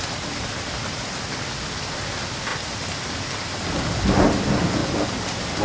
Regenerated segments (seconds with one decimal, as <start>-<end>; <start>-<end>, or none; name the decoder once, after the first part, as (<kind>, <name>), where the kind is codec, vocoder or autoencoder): none